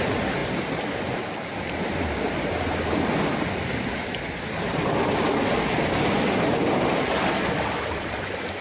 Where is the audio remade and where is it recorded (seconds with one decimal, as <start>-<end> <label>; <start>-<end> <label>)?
0.0-8.6 recorded